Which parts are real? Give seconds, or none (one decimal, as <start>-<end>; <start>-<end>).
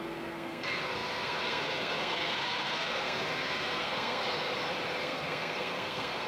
4.2-5.0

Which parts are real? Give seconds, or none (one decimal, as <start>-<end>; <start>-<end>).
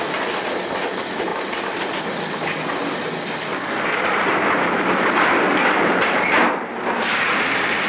0.0-1.3; 2.0-3.5; 5.7-7.9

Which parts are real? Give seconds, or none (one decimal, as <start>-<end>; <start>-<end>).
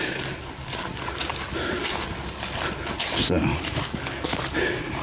0.0-3.5; 4.5-5.0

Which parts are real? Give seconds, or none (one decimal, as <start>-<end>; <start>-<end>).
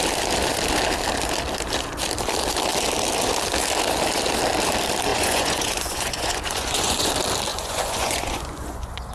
0.0-5.1; 7.1-7.5